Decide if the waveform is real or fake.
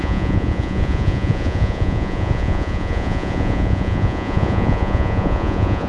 fake